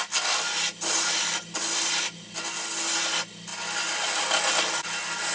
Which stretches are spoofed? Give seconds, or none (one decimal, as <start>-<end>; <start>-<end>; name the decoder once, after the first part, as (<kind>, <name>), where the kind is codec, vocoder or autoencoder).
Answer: none